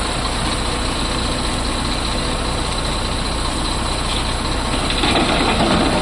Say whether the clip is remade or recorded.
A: recorded